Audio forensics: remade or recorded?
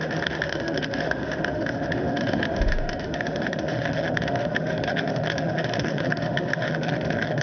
remade